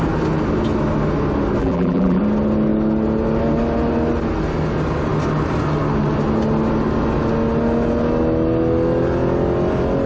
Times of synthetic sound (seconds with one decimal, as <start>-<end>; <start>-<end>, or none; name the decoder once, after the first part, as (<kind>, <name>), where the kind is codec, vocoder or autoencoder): 1.6-2.2 (vocoder, BigVGAN v2)